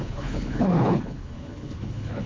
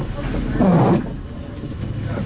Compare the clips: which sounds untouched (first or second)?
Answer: second